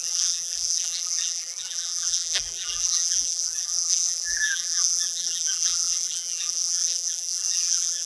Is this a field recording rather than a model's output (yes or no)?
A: no